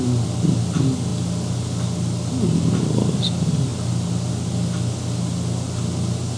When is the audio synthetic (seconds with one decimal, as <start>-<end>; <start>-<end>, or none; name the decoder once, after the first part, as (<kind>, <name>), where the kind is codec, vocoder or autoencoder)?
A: none